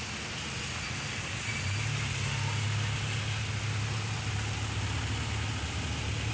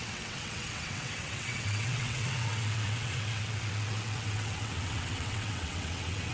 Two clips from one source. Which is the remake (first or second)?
second